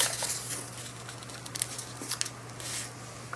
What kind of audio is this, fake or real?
real